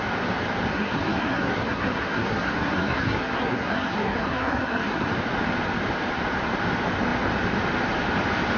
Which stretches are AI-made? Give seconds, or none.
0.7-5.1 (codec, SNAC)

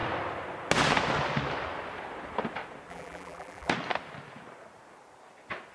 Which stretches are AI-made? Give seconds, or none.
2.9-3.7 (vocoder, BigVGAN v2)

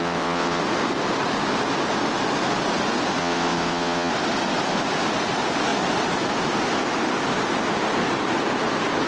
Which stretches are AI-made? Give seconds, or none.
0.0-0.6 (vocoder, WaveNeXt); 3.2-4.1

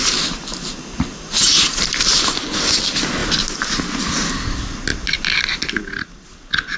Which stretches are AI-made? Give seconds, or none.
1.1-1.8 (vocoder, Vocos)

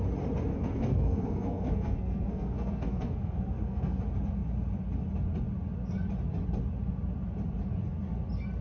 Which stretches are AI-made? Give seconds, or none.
0.5-4.0 (codec, SNAC)

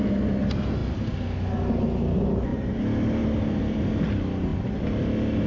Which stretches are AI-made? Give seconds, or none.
2.5-3.6 (vocoder, BigVGAN v2)

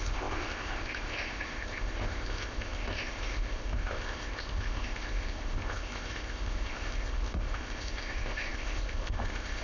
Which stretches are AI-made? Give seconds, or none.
0.0-9.6 (codec, ZipCodec)